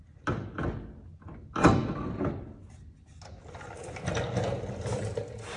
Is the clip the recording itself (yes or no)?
yes